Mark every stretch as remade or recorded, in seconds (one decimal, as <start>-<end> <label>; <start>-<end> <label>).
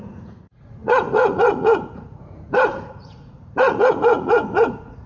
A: 0.0-5.1 remade